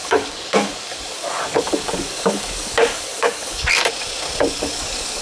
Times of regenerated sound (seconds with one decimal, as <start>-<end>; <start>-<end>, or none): 0.0-3.8; 4.4-5.2